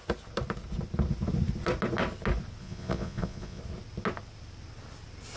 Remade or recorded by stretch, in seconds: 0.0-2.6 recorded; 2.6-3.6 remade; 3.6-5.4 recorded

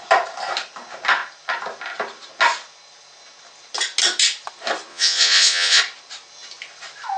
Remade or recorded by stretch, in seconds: 0.0-4.9 recorded; 4.9-5.8 remade; 5.8-7.2 recorded

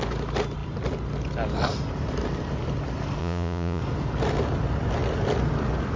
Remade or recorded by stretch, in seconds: 0.0-3.2 recorded; 3.2-3.8 remade; 3.8-6.0 recorded

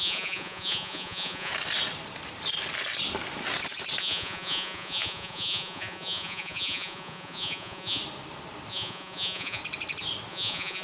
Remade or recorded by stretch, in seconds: 0.0-1.5 remade; 1.5-4.0 recorded; 4.0-8.0 remade; 8.0-8.7 recorded; 8.7-9.6 remade; 9.6-10.3 recorded; 10.3-10.8 remade